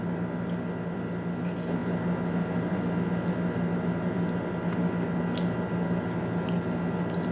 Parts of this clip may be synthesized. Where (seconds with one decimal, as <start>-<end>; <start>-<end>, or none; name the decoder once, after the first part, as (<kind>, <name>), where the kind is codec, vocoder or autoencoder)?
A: none